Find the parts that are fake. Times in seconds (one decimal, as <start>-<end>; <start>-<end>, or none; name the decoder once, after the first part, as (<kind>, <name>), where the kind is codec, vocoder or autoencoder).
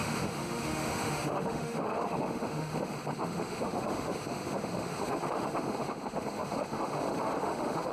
0.0-7.9 (autoencoder, DAC-VAE)